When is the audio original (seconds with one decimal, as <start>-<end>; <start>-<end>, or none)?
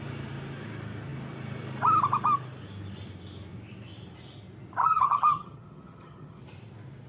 0.0-4.8; 6.4-7.1